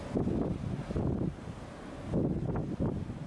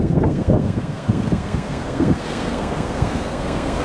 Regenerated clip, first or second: second